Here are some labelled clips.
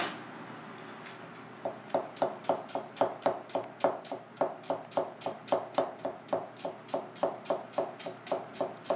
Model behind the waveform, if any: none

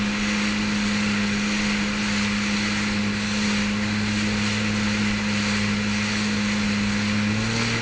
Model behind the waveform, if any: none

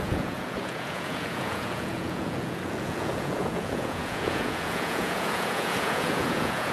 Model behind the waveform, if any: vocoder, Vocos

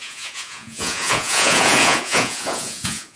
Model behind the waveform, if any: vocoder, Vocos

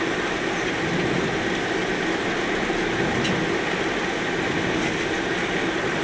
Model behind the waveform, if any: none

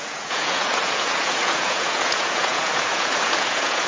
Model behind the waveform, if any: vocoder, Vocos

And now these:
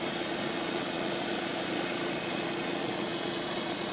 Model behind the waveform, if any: vocoder, Vocos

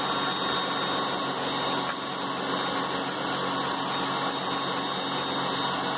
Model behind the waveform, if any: none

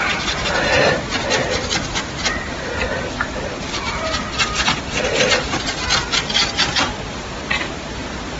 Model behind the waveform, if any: none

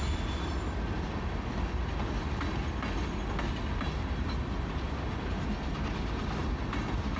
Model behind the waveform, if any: none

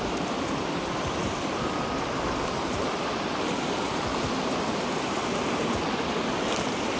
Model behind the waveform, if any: none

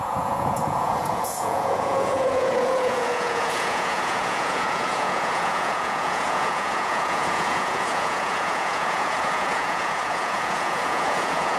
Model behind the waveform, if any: vocoder, Vocos